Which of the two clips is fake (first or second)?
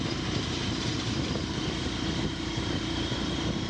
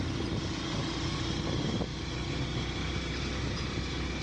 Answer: first